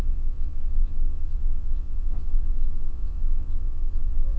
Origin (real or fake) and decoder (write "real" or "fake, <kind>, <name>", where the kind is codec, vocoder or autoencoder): fake, vocoder, WaveNeXt